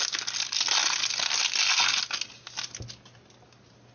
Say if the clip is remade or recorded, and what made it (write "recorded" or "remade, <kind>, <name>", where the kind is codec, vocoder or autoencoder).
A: recorded